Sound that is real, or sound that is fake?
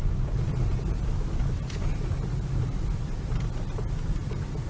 real